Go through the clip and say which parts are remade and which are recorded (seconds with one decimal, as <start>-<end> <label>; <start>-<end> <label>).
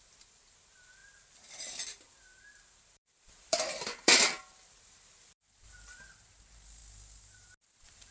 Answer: 0.0-6.8 remade; 6.8-7.6 recorded; 7.6-8.1 remade